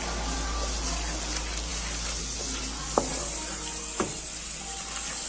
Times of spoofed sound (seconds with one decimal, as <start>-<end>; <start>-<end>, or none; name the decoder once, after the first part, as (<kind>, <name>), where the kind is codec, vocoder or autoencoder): none